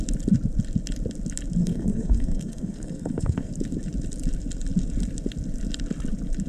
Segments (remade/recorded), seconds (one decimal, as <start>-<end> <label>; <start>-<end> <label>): 0.0-1.6 recorded; 1.6-3.5 remade; 3.5-6.5 recorded